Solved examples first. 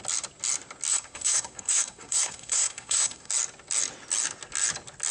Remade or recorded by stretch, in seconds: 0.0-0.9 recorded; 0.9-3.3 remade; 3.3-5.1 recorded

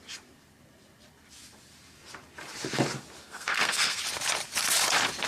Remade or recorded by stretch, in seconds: 0.0-3.2 recorded; 3.2-4.0 remade; 4.0-5.3 recorded